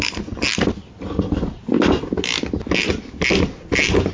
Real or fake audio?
real